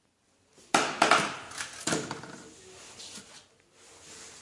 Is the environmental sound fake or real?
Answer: real